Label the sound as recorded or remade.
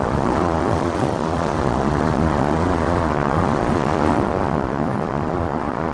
remade